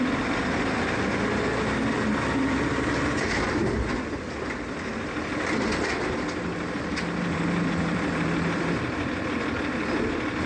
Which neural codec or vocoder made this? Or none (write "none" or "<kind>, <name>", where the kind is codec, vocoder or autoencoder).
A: none